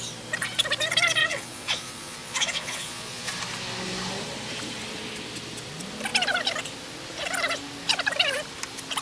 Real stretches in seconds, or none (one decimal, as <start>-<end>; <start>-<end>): 0.0-1.2; 3.3-9.0